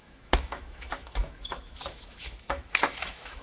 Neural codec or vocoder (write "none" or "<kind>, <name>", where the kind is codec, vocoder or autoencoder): autoencoder, DAC-VAE